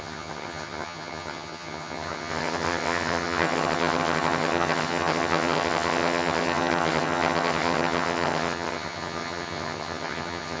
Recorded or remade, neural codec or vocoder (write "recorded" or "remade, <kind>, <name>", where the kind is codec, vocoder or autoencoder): remade, vocoder, HiFi-GAN